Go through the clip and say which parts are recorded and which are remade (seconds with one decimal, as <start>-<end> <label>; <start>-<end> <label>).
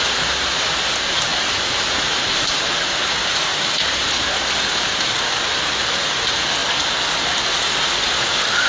0.0-6.6 remade; 6.6-7.5 recorded; 7.5-8.7 remade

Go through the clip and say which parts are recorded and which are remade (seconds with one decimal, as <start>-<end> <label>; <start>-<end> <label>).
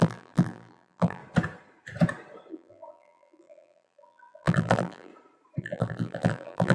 0.0-1.2 remade; 1.2-2.5 recorded; 2.5-5.1 remade; 5.1-5.6 recorded; 5.6-6.7 remade